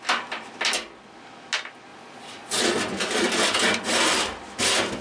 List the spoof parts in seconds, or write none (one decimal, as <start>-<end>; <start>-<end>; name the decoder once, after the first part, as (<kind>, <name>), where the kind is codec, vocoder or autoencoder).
1.9-2.6 (vocoder, Vocos)